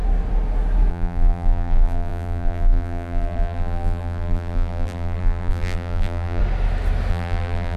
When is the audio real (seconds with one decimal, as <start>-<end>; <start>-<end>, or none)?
0.0-0.9; 6.4-7.1